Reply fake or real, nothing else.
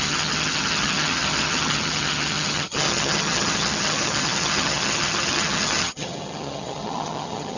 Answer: fake